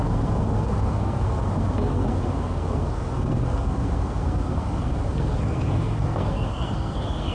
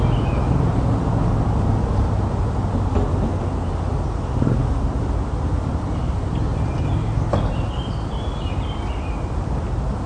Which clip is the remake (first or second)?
first